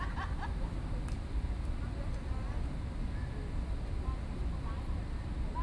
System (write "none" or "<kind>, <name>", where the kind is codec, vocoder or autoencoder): none